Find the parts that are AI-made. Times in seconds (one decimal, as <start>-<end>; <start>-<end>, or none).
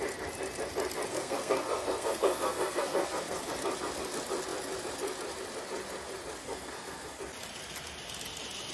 1.1-3.5; 6.4-7.2